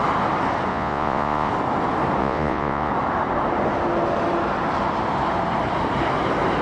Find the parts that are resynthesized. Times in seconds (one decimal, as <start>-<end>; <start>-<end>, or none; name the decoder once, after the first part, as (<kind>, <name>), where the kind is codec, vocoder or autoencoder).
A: 0.7-1.5 (vocoder, Vocos); 2.2-2.9